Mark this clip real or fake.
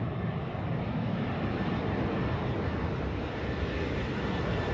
real